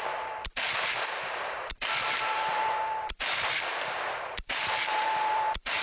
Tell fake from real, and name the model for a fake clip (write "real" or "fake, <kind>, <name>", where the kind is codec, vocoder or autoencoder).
fake, vocoder, BigVGAN v2